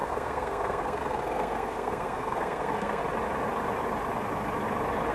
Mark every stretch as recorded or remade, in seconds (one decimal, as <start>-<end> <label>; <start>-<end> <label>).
0.0-3.0 remade; 3.0-5.1 recorded